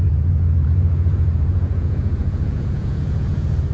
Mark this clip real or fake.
fake